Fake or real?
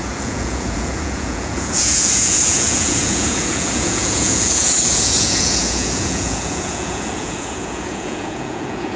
fake